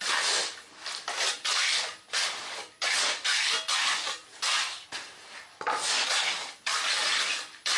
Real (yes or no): yes